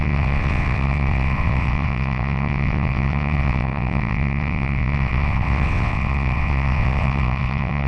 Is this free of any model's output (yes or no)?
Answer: no